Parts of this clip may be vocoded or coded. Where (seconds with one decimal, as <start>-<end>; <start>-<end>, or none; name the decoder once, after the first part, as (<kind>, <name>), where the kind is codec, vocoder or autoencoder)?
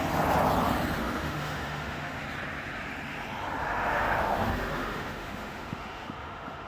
1.0-2.2 (autoencoder, DAC-VAE); 3.6-6.7